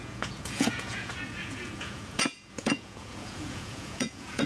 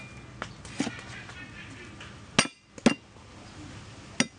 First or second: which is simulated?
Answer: first